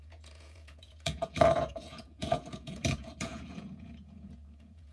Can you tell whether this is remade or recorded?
remade